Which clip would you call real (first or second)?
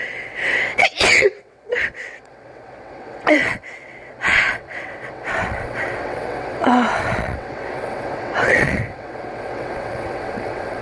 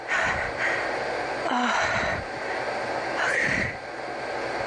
second